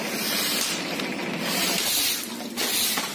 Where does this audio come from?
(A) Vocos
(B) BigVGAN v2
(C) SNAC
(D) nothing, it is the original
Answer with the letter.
B